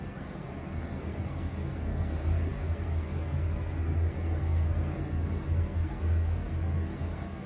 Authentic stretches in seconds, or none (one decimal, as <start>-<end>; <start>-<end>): none